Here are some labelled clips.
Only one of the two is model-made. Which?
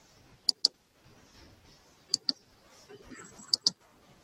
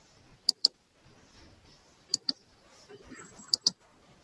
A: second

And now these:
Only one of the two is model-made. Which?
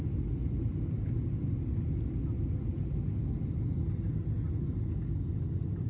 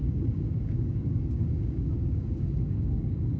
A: second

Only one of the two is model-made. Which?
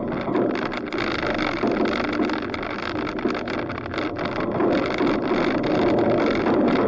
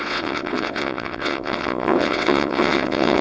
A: second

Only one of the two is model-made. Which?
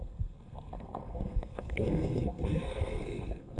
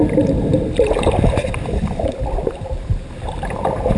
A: first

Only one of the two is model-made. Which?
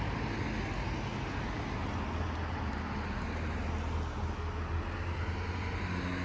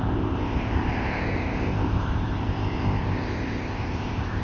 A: second